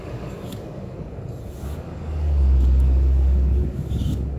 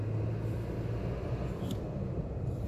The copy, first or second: first